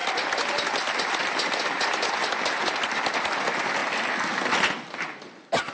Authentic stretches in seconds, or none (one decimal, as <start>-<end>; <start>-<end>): 0.0-5.7